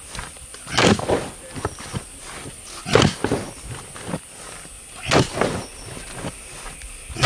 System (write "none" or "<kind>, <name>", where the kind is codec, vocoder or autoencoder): none